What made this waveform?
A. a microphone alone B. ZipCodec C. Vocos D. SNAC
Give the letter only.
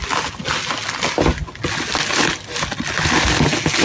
A